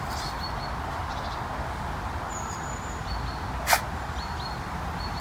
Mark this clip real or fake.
real